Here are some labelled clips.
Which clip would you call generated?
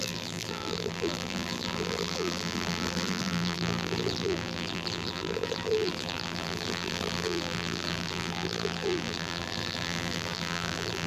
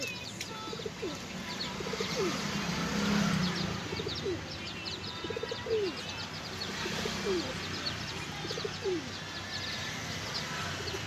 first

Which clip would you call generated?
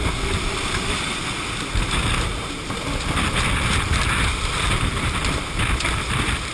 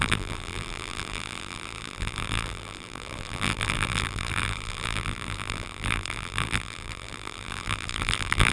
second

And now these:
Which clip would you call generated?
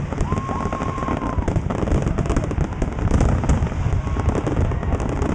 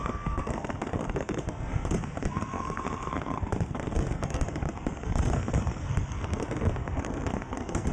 second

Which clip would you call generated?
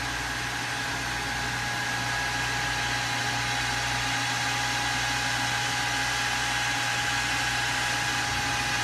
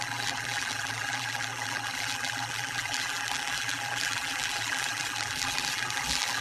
second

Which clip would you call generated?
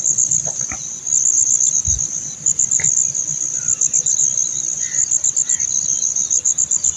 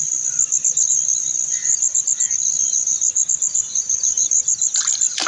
second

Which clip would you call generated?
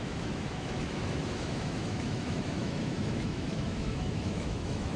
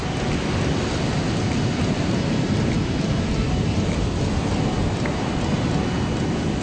first